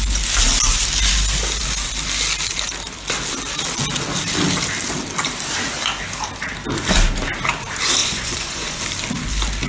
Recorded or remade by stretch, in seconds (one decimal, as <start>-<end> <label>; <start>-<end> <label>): 0.0-8.0 recorded; 8.0-8.8 remade; 8.8-9.7 recorded